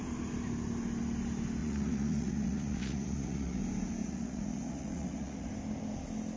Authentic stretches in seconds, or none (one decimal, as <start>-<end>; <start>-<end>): 0.0-1.6; 3.6-4.0; 5.5-6.4